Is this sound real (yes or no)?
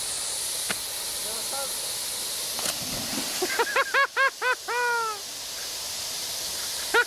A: yes